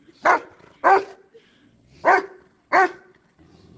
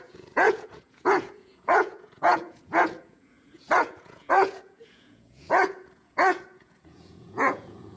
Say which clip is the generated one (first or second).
second